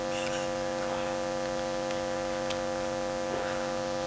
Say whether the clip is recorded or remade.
recorded